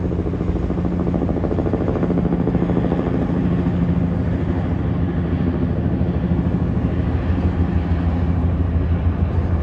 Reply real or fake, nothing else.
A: real